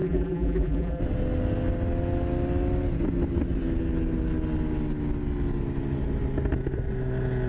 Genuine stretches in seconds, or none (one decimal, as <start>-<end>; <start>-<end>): 1.0-7.5